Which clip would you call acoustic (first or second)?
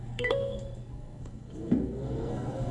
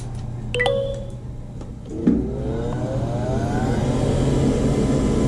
second